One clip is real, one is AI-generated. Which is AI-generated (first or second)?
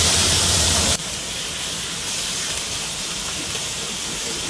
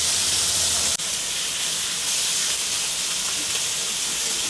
first